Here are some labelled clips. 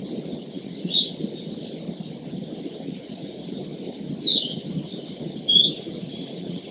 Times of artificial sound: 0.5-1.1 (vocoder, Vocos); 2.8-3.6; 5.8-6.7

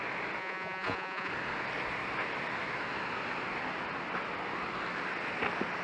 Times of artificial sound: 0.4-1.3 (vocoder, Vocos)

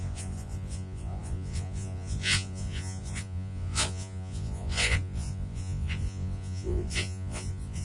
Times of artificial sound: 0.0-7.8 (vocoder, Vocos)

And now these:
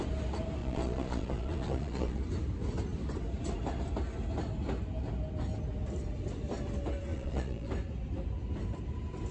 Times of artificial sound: 0.6-2.2 (vocoder, Vocos); 7.1-7.7